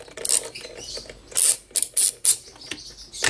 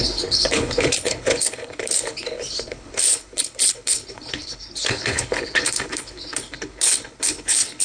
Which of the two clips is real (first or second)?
first